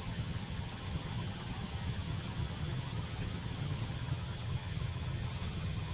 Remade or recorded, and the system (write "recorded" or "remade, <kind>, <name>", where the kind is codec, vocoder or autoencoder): remade, vocoder, HiFi-GAN